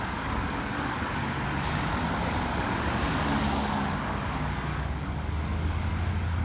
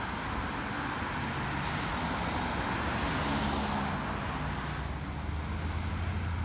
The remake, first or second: first